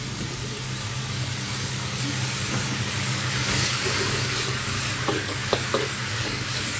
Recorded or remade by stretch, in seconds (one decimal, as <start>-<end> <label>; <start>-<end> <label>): 0.0-6.8 remade